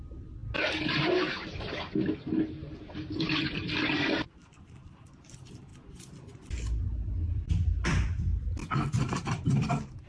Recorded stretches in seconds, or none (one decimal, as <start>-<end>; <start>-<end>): 0.4-3.1; 5.7-7.3; 8.3-8.9

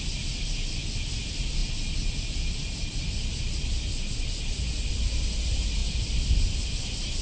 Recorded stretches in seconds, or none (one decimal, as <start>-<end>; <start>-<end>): 1.6-4.9

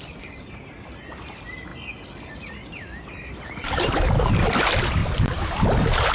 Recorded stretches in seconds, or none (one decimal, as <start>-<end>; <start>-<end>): 1.7-4.3; 5.0-6.1

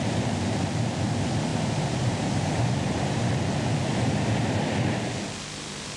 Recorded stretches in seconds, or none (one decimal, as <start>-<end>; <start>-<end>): 0.0-1.5; 3.3-3.9; 4.6-6.0

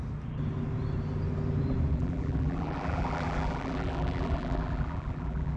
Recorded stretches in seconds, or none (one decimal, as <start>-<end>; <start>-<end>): 0.0-1.9

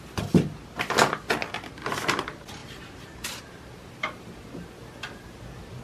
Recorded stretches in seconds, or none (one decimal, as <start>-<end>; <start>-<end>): 0.0-2.6; 3.4-5.8

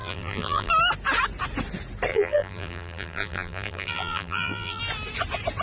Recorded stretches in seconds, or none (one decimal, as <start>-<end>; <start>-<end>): 0.7-2.1; 4.8-5.6